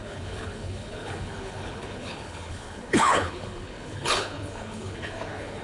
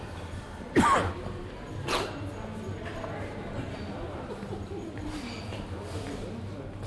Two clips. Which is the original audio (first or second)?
second